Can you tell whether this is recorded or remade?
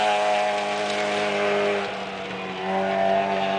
recorded